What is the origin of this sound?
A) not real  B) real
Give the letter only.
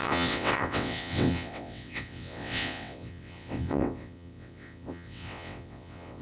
A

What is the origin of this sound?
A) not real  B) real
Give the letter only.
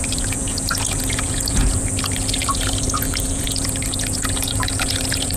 A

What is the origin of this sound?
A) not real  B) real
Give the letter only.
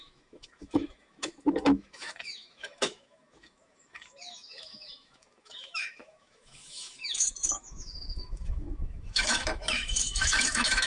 A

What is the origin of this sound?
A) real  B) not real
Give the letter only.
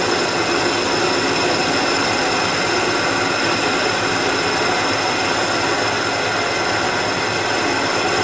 A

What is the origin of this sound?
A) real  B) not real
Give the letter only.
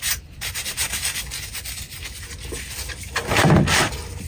A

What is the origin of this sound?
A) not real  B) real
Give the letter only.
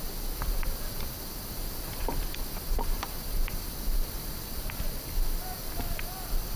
A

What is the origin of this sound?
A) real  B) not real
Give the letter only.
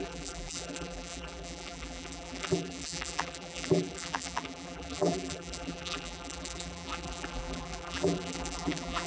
B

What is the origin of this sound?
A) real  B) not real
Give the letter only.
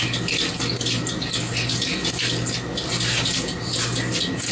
A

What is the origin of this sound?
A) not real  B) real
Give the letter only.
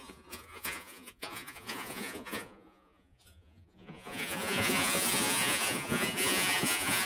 A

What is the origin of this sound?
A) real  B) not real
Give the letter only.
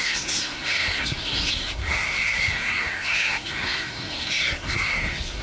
B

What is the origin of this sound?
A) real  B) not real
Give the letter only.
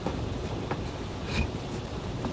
A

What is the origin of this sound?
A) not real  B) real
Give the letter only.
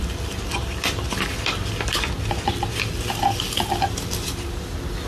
B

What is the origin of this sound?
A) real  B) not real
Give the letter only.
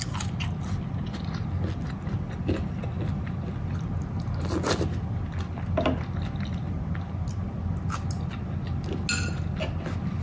A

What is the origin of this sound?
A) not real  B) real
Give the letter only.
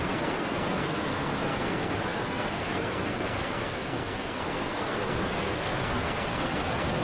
A